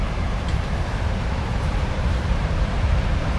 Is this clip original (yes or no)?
no